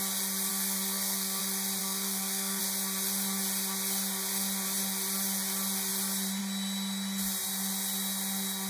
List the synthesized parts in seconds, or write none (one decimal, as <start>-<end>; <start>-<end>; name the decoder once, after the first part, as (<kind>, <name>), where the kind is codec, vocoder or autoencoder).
0.5-1.4 (codec, SNAC); 1.8-2.6